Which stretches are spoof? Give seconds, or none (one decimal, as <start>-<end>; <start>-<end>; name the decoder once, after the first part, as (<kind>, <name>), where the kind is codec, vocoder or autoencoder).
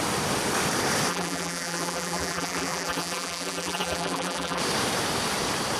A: 1.1-4.6 (vocoder, BigVGAN v2)